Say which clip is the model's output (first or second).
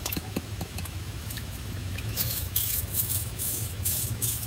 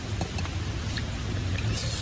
first